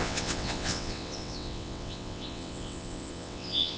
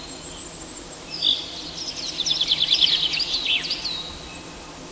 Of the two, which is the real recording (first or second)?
second